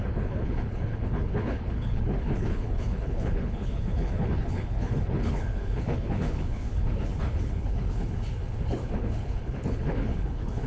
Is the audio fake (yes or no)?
yes